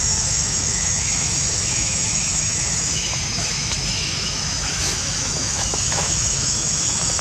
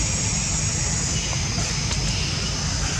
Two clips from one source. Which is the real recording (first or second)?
second